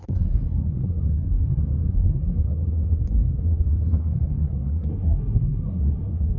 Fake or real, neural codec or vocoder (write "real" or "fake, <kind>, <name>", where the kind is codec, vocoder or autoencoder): fake, codec, SNAC